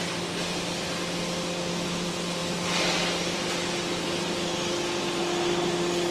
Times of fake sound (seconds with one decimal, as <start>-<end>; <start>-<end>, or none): none